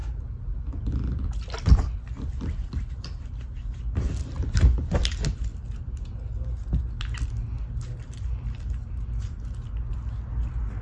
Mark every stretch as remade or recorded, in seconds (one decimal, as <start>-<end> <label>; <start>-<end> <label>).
0.0-10.8 recorded